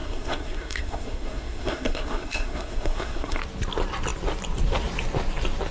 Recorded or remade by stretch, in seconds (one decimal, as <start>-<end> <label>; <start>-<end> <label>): 0.0-3.4 remade; 3.4-5.7 recorded